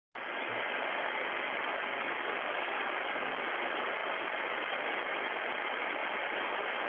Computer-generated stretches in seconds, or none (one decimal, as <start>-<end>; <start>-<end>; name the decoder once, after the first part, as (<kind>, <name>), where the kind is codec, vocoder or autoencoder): 1.9-3.4 (codec, DAC)